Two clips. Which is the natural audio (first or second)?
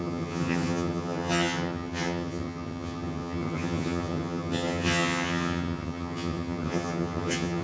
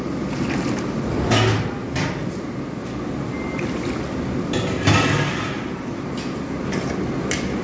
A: second